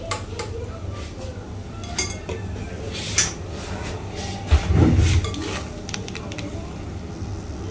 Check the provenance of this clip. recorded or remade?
recorded